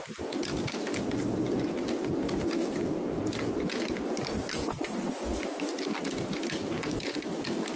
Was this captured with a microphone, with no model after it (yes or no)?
yes